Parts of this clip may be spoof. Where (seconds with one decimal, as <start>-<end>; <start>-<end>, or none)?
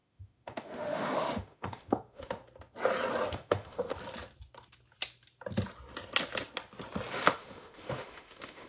0.0-2.4; 3.3-3.9; 7.1-8.7